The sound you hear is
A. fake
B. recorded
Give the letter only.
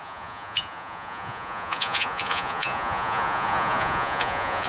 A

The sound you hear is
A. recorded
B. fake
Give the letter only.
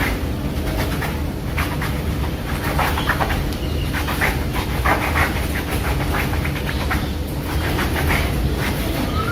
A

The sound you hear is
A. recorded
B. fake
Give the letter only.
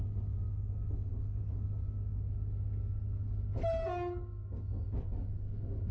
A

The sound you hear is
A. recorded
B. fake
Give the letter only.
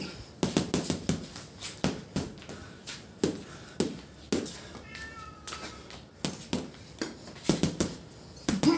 A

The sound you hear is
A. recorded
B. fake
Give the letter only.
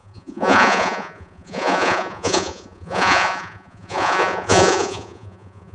B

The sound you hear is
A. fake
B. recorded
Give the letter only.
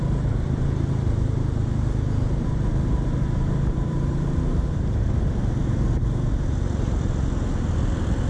B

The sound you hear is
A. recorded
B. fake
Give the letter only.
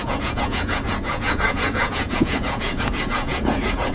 B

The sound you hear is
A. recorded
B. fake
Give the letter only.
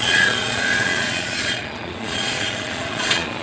B